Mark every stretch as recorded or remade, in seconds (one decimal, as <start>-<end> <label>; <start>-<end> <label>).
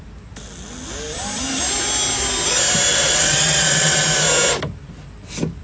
0.0-2.9 recorded; 2.9-4.0 remade; 4.0-5.6 recorded